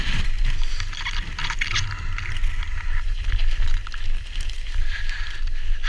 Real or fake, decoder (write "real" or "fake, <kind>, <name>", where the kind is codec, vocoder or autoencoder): real